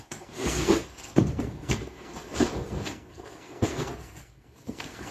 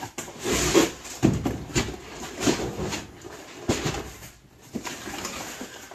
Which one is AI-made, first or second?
first